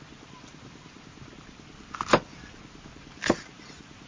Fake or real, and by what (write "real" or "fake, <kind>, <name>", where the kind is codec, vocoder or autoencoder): real